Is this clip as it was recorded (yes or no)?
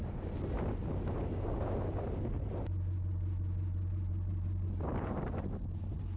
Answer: yes